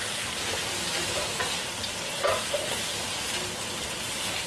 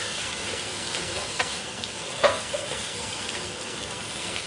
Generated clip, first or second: second